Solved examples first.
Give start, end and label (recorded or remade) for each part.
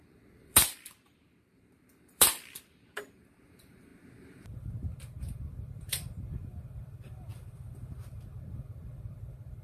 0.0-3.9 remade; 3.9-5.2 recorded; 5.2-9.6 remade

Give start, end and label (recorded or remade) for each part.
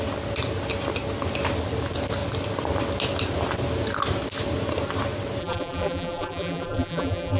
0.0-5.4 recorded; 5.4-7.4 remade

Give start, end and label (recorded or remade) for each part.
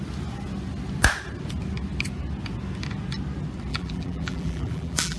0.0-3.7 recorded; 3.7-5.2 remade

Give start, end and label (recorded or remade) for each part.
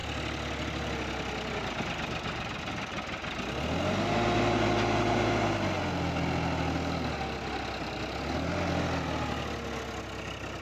0.0-10.6 recorded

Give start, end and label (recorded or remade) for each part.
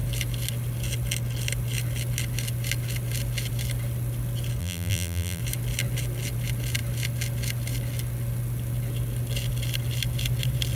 0.0-4.6 recorded; 4.6-5.4 remade; 5.4-10.8 recorded